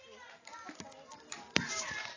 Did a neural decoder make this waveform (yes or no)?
no